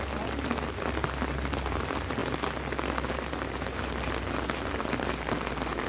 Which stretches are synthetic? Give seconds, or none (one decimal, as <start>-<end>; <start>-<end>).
none